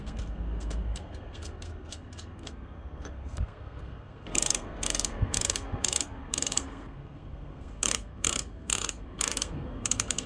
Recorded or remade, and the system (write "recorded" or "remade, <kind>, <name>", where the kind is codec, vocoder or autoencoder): remade, codec, SNAC